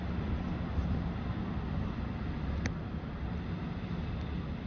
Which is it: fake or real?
real